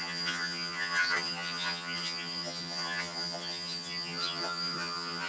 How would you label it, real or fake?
fake